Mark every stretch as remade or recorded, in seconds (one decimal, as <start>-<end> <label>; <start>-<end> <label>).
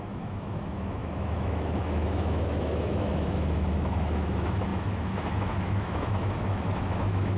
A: 0.0-7.4 remade